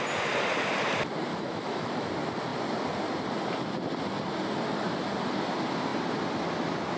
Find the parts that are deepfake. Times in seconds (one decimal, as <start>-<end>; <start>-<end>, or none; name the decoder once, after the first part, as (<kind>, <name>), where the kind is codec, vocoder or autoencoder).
1.3-2.1 (autoencoder, DAC-VAE)

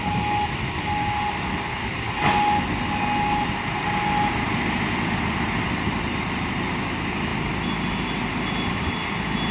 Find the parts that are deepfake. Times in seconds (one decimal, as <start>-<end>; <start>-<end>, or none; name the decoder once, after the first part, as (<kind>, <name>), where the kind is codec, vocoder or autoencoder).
none